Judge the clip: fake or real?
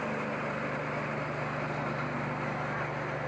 real